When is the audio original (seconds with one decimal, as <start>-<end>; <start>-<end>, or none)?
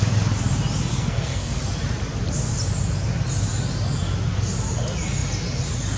0.0-0.9; 1.6-6.0